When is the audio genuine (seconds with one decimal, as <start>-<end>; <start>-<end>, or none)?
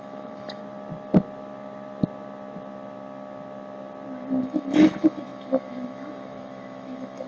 0.6-4.4